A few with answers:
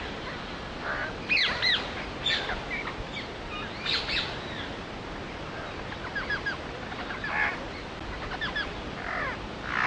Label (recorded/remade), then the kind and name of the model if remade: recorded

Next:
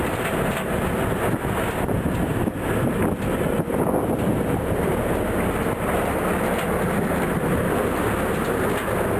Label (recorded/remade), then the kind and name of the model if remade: recorded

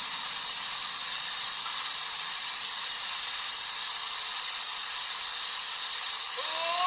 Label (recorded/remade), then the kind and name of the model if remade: recorded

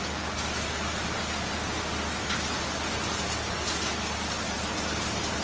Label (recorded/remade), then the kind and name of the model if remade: recorded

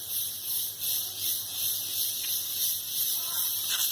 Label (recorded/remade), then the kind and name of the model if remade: recorded